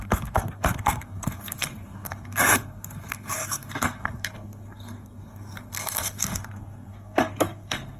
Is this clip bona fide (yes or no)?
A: no